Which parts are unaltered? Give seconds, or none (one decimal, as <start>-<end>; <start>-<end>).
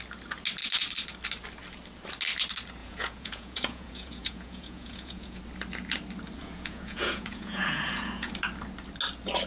0.0-2.8; 5.4-6.4; 8.3-9.5